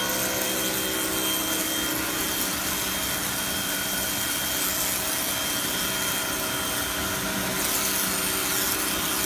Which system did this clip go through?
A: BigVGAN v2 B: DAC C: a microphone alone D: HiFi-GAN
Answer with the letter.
C